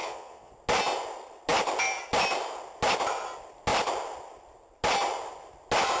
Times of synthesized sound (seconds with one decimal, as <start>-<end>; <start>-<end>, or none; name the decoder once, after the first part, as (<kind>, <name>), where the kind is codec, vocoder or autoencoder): 0.0-0.5 (vocoder, Vocos)